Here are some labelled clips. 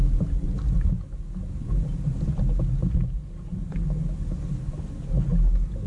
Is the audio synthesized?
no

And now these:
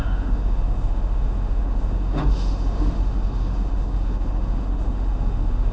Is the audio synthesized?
yes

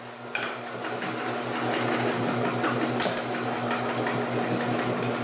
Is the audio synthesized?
yes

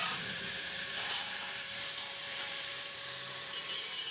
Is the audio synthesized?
yes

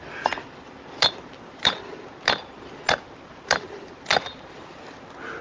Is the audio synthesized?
no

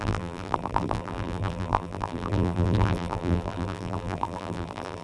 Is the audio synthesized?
yes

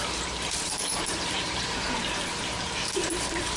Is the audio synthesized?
yes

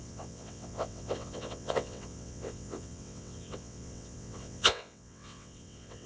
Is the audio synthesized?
yes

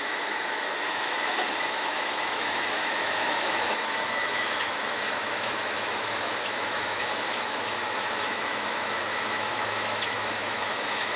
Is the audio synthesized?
yes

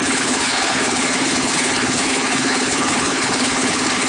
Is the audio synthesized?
yes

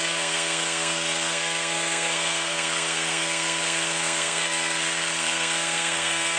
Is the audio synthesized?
yes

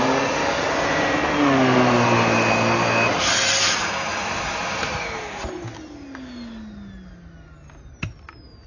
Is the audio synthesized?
no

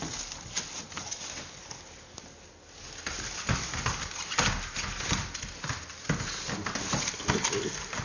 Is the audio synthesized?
no